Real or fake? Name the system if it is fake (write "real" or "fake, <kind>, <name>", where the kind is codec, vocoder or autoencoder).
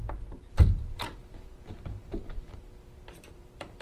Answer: fake, vocoder, BigVGAN v2